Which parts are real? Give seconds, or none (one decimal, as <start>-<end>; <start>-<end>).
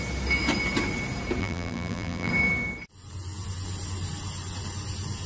0.0-1.4; 2.3-5.3